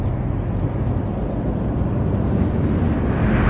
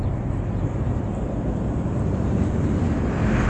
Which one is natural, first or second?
first